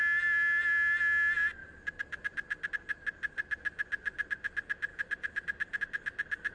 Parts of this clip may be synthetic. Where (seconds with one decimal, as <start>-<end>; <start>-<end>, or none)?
1.6-2.7; 4.9-5.8

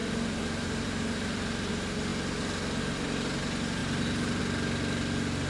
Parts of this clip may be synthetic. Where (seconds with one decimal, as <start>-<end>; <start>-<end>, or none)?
0.0-1.7; 3.8-4.4